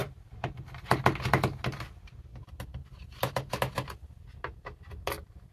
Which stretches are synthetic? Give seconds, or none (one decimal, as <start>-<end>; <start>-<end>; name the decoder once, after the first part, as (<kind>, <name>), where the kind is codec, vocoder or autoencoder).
0.0-1.0 (vocoder, BigVGAN v2)